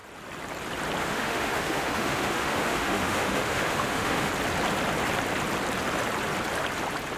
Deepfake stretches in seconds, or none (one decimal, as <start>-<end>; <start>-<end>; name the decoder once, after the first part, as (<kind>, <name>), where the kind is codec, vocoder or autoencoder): 1.0-4.3 (autoencoder, DAC-VAE)